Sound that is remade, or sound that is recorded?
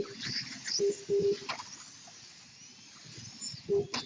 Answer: recorded